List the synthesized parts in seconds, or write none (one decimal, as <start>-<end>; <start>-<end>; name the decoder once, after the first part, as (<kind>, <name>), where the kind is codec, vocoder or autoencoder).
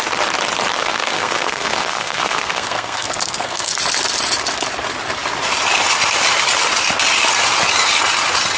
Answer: 0.8-3.7 (codec, SNAC)